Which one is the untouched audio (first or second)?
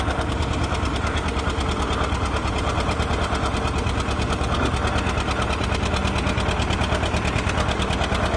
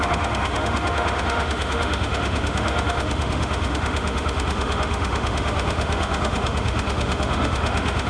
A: first